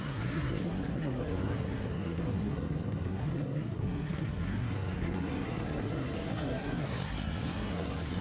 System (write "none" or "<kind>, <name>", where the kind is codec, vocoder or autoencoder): codec, SNAC